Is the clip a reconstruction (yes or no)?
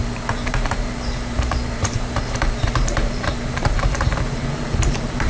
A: yes